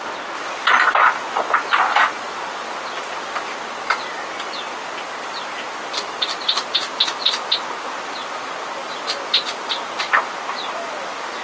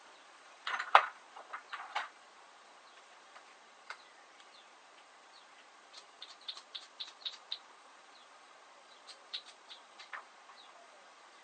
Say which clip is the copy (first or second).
second